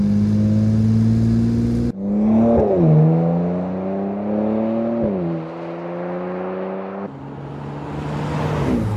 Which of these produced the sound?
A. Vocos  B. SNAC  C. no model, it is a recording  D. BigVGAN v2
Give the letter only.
C